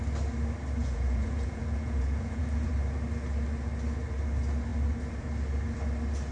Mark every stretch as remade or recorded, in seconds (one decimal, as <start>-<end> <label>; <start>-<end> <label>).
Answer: 0.0-0.8 recorded; 0.8-2.7 remade; 2.7-6.3 recorded